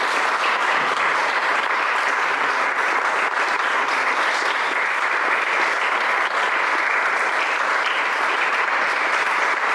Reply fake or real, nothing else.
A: real